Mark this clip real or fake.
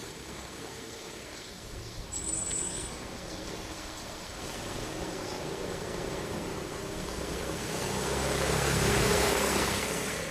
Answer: fake